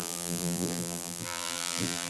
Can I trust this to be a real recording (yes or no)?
no